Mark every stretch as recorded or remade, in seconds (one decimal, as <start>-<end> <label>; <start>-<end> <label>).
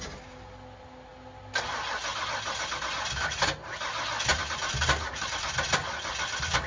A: 0.0-6.7 recorded